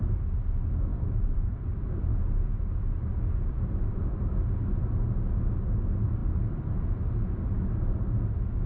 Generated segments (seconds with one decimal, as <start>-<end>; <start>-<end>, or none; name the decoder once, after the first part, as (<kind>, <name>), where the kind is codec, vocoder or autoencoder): 0.9-4.4 (vocoder, BigVGAN v2); 6.2-7.2